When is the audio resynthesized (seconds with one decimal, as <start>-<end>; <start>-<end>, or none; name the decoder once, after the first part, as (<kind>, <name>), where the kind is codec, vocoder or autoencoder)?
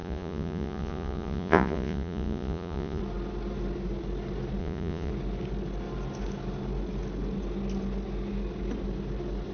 0.0-3.0 (vocoder, Vocos); 4.6-5.1